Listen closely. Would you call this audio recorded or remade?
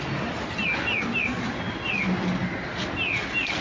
recorded